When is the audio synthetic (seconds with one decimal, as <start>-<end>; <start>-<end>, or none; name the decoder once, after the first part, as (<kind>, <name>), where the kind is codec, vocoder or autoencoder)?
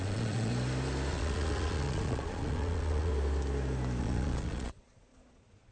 0.0-0.5 (vocoder, Vocos); 1.1-3.1; 4.0-5.7